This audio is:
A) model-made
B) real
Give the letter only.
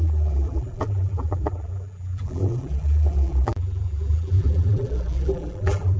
A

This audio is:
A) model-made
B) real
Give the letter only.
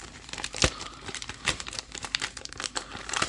A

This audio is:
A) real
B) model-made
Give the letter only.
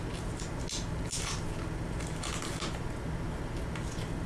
A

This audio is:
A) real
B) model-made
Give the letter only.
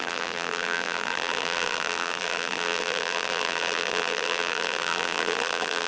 B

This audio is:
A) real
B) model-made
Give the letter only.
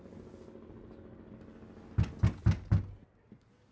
A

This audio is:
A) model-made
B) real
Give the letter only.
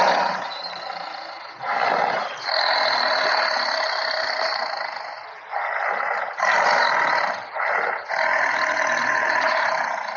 B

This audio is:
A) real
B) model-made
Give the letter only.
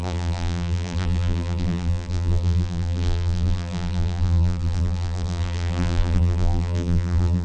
B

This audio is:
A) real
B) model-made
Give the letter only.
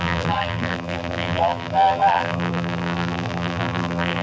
B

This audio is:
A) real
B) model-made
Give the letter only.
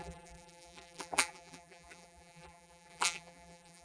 B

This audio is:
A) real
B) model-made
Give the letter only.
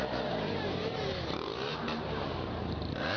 B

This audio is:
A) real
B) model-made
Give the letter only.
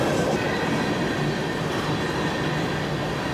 A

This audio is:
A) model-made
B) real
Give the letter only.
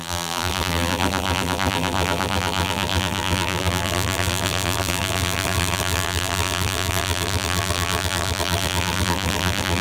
A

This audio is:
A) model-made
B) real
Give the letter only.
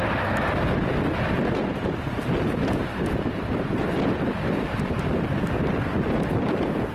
B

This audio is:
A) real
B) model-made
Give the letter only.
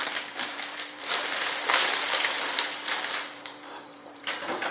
B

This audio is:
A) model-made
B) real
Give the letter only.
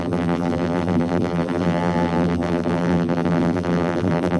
A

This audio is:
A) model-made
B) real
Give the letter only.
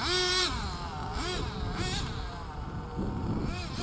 B